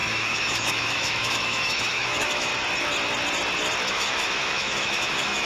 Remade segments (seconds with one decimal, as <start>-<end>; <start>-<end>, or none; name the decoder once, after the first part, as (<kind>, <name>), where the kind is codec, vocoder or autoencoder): 0.0-2.5 (autoencoder, DAC-VAE); 3.9-5.5